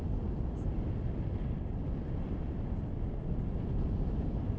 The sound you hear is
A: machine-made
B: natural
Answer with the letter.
B